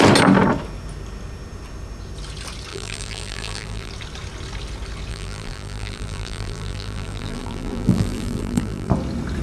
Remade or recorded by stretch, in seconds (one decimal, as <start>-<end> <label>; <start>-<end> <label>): 0.0-2.7 recorded; 2.7-3.9 remade; 3.9-5.1 recorded; 5.1-8.9 remade; 8.9-9.4 recorded